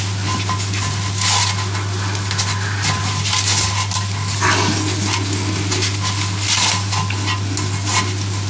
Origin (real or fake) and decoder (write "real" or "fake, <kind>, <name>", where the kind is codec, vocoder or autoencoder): real